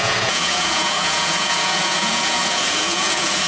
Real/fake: fake